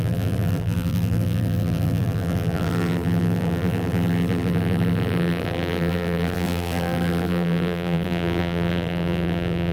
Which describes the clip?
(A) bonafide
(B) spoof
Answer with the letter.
B